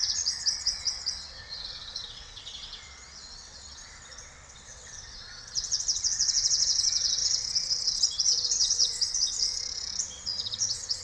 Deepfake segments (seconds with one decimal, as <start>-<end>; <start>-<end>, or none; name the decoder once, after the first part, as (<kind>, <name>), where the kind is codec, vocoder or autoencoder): 0.0-11.0 (vocoder, WaveNeXt)